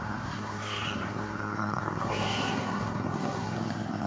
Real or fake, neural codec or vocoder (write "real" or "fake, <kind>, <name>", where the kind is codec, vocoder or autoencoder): fake, codec, SNAC